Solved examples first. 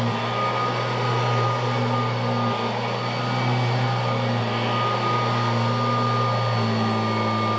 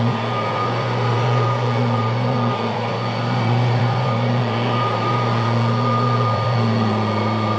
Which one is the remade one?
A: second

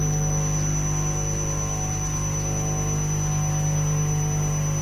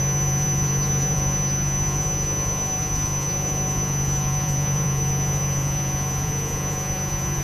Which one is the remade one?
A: second